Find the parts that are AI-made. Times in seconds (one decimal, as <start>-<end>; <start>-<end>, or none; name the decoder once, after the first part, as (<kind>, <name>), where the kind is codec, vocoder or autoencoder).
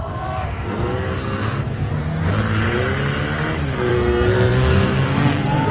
0.0-1.9 (codec, SNAC); 3.9-5.7